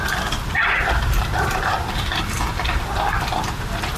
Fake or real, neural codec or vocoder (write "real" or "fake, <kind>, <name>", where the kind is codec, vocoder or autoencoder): fake, vocoder, BigVGAN v2